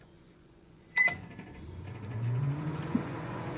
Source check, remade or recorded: remade